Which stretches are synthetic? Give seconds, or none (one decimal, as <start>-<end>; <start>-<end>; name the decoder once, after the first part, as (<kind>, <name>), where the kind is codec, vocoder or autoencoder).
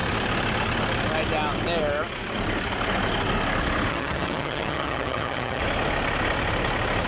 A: 3.9-5.6 (vocoder, HiFi-GAN)